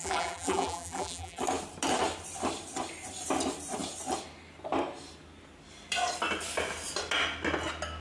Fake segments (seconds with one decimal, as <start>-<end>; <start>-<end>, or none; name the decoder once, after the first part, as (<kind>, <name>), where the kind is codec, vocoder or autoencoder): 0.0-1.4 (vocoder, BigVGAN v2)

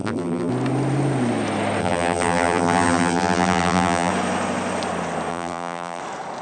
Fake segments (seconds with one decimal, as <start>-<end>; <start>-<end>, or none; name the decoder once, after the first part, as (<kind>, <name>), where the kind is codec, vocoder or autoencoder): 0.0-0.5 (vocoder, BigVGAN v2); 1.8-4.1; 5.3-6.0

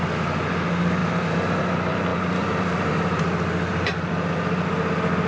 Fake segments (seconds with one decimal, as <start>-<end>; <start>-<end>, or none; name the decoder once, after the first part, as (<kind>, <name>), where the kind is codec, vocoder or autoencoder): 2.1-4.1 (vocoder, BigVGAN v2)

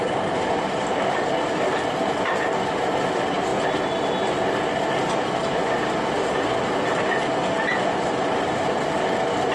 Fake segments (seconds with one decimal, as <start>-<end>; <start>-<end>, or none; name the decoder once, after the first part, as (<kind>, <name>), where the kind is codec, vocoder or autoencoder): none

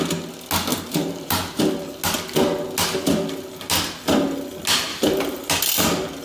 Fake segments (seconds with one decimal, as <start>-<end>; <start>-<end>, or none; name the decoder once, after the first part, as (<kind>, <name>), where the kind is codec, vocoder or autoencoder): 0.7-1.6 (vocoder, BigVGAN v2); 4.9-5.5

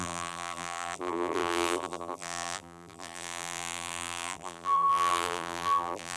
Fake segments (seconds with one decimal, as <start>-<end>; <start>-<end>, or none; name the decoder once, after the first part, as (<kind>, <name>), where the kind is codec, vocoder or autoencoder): 0.0-6.2 (vocoder, BigVGAN v2)

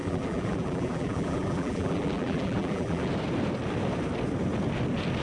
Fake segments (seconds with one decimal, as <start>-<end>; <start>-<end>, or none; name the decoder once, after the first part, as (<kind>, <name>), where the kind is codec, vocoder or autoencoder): 0.0-3.1 (vocoder, BigVGAN v2)